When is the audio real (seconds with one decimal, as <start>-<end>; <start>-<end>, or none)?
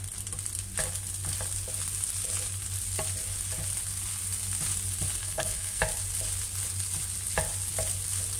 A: 0.0-5.2; 5.8-8.4